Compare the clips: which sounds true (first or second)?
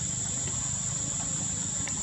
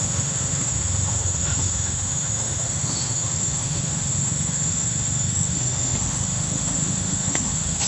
first